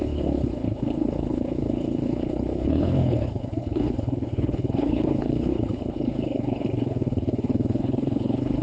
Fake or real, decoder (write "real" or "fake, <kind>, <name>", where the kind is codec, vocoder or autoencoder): fake, codec, HILCodec